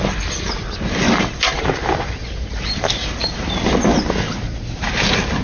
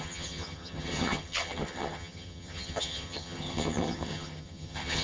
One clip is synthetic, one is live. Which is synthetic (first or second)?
second